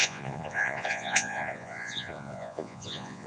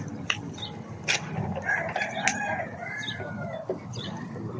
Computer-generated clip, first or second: first